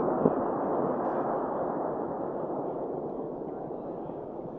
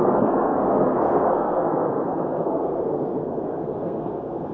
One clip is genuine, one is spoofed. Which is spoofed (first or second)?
second